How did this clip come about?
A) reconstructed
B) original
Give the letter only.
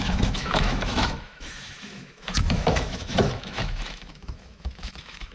A